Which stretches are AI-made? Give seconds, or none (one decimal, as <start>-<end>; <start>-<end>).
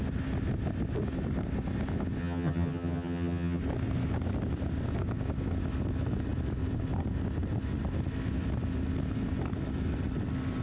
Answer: 2.2-3.6